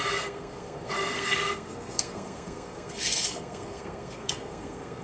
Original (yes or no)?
no